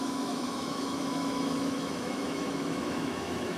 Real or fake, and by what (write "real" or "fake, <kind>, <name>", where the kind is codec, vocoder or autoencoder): fake, autoencoder, DAC-VAE